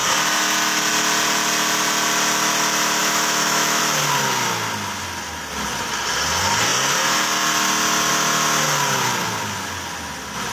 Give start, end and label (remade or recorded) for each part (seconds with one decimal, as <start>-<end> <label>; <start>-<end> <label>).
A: 0.0-3.0 recorded; 3.0-3.8 remade; 3.8-10.5 recorded